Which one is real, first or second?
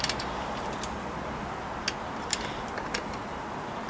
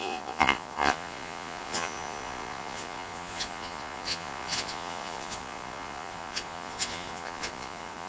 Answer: first